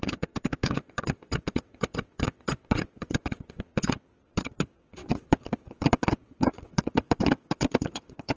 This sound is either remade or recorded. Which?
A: remade